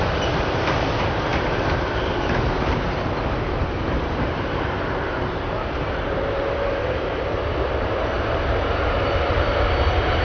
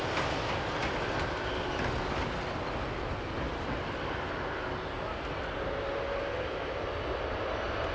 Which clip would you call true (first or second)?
second